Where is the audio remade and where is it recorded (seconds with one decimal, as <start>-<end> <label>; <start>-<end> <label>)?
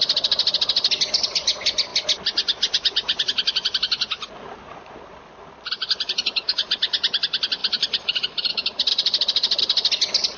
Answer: 0.0-7.6 recorded; 7.6-8.5 remade; 8.5-8.9 recorded; 8.9-9.6 remade; 9.6-10.4 recorded